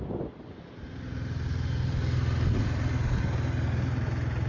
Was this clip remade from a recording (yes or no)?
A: no